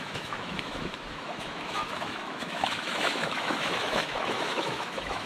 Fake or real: fake